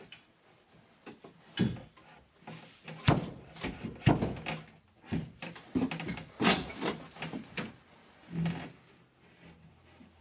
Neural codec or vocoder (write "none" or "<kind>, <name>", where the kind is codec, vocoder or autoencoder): none